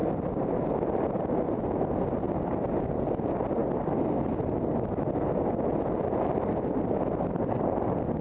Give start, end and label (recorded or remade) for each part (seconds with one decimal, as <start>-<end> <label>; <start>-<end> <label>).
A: 0.0-8.2 recorded